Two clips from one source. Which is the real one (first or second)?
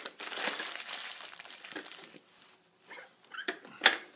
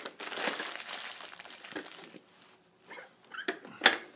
second